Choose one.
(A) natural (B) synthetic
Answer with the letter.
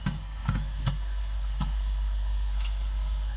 B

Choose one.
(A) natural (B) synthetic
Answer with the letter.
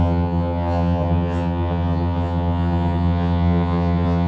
B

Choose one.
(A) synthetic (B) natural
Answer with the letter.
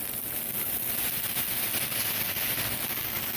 B